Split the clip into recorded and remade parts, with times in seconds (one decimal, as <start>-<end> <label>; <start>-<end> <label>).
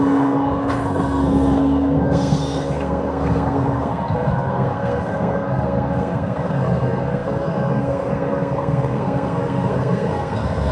0.0-10.7 remade